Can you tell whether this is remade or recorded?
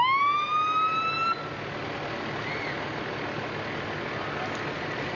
recorded